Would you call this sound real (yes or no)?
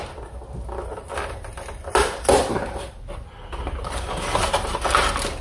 yes